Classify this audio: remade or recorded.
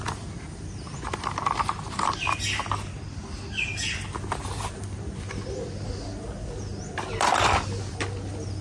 recorded